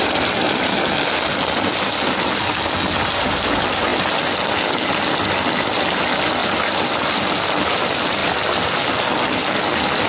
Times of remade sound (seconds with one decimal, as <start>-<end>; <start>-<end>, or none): none